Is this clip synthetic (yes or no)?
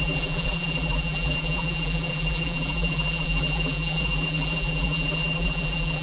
yes